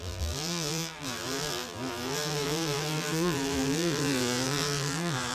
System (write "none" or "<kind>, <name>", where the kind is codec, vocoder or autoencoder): vocoder, BigVGAN v2